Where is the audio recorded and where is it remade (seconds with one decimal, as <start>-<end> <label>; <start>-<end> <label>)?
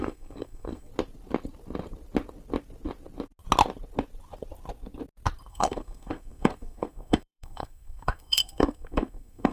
0.0-0.9 remade; 0.9-5.5 recorded; 5.5-9.5 remade